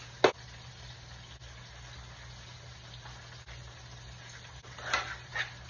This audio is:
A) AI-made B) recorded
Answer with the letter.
B